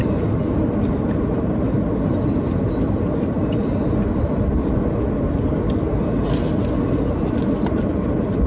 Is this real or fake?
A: real